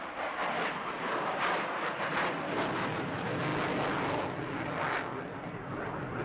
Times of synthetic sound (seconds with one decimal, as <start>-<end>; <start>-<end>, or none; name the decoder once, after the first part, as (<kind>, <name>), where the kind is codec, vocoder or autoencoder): none